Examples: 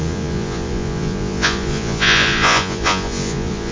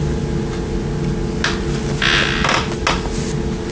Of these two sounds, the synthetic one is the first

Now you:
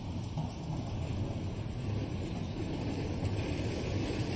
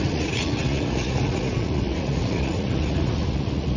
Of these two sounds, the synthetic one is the second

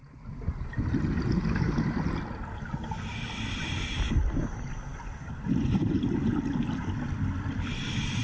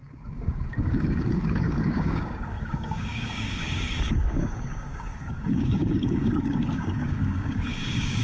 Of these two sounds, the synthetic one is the second